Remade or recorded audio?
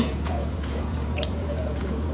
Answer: remade